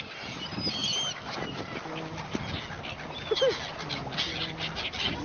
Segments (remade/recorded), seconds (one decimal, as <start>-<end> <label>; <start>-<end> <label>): 0.0-5.2 recorded